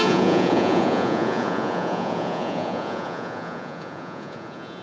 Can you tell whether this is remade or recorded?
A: remade